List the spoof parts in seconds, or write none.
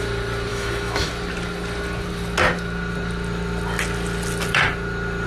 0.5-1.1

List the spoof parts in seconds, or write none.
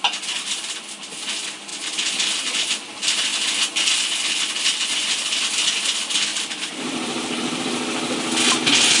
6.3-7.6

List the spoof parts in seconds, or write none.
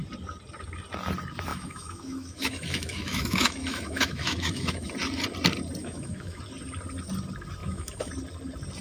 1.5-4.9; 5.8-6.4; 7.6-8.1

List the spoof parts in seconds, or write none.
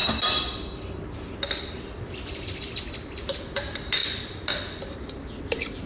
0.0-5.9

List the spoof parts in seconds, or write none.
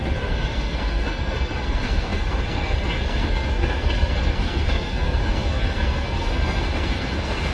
0.0-7.5